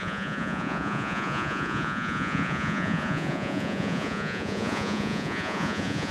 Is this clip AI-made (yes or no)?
yes